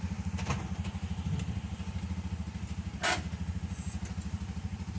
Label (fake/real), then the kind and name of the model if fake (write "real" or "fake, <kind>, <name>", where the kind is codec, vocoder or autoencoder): real